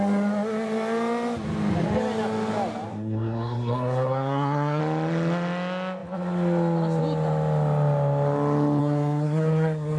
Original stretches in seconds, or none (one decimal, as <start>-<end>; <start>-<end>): 0.0-2.9; 4.8-8.8